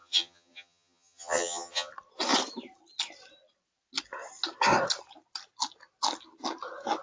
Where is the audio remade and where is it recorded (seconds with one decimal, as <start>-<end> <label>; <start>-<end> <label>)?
0.0-1.9 remade; 1.9-7.0 recorded

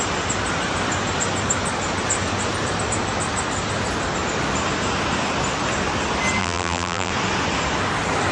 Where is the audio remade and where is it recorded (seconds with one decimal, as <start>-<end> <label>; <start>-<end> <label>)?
0.0-6.4 recorded; 6.4-7.1 remade; 7.1-8.3 recorded

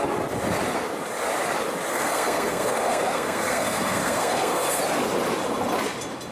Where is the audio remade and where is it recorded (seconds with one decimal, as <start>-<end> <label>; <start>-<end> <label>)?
0.0-1.9 recorded; 1.9-4.8 remade; 4.8-6.3 recorded

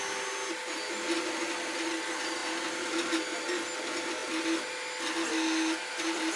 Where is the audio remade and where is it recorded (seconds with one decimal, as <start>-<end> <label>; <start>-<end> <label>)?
0.0-6.4 recorded

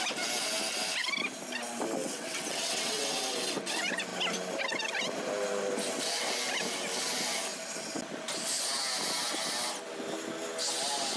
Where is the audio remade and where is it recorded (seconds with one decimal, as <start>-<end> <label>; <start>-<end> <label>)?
0.0-2.0 recorded; 2.0-3.4 remade; 3.4-11.2 recorded

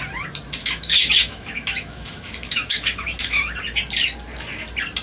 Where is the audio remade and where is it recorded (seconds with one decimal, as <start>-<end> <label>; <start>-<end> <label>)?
0.0-0.6 recorded; 0.6-3.6 remade; 3.6-5.0 recorded

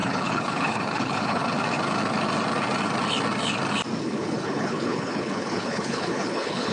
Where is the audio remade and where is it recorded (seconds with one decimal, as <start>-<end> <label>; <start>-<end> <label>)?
0.0-1.4 remade; 1.4-4.0 recorded; 4.0-6.7 remade

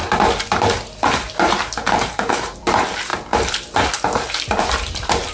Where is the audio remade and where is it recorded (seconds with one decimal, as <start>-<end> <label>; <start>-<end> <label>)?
0.0-1.1 recorded; 1.1-5.3 remade